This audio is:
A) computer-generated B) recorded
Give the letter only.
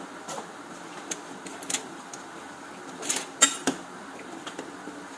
B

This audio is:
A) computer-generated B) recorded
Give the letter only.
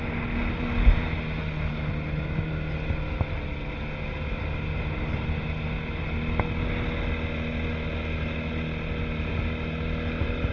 B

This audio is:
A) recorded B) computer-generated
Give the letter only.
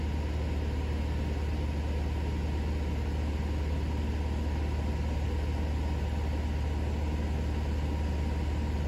A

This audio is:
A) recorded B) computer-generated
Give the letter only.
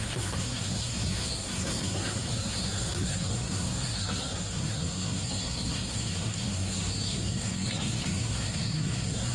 B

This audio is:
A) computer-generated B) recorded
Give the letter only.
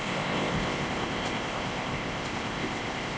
A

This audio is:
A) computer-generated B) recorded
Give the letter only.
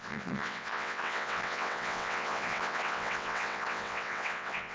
A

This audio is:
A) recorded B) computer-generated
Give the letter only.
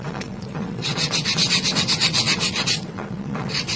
B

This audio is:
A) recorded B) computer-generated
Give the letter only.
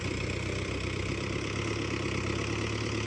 A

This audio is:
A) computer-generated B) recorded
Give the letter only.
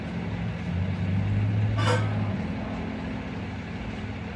B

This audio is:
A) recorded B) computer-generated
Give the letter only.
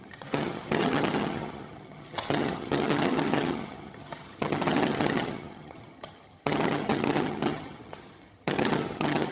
B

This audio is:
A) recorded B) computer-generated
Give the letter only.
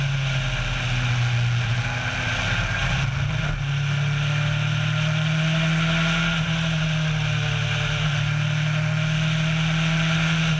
A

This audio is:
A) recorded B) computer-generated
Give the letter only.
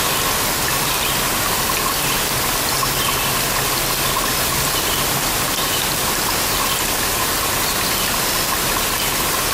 A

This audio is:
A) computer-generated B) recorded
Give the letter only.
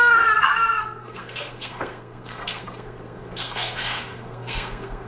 A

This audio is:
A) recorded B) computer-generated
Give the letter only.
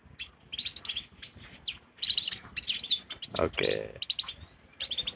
A